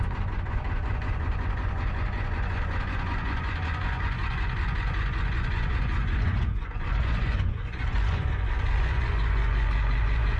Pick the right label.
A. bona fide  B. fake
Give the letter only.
B